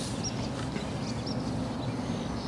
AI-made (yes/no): no